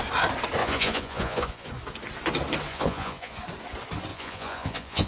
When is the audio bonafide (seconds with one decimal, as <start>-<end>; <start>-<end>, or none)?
0.0-0.6; 1.7-2.7; 3.3-4.1